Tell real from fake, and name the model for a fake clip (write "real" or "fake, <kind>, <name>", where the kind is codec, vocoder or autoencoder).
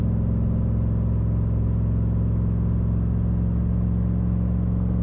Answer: real